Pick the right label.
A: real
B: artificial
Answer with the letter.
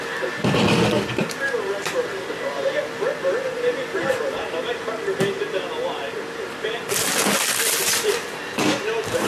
B